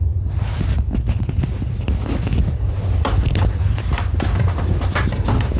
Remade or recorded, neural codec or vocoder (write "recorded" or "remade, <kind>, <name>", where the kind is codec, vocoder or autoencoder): recorded